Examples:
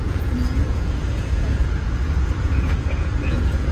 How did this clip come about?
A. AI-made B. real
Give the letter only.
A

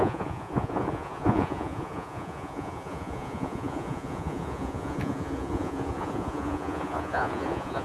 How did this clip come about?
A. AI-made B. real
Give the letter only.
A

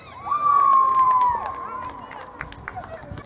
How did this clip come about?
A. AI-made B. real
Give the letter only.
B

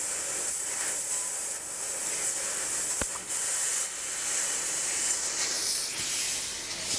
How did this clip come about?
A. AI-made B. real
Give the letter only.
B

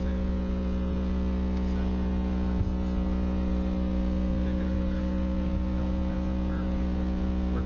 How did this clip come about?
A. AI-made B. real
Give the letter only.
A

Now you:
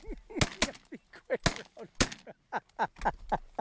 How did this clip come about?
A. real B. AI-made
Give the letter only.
A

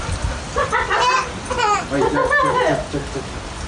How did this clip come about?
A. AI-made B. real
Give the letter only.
B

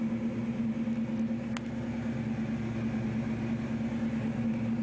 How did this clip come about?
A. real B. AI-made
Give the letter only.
A